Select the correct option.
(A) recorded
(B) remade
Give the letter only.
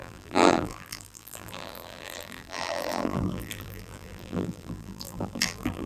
B